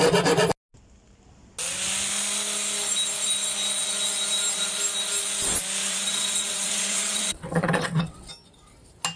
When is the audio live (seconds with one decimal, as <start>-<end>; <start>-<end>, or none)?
0.0-5.8; 8.3-9.2